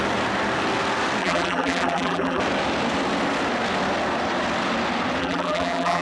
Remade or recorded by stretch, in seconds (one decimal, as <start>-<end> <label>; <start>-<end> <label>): 0.0-1.2 recorded; 1.2-2.4 remade; 2.4-5.2 recorded; 5.2-6.0 remade